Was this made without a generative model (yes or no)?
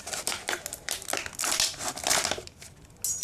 yes